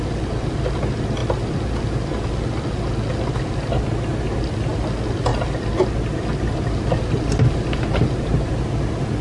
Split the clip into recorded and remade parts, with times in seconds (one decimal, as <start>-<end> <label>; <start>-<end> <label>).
0.0-9.2 recorded